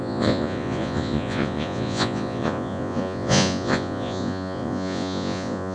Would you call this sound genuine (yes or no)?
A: no